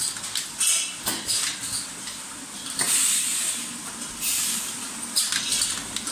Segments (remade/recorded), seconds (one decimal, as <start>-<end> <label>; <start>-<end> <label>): 0.0-6.1 recorded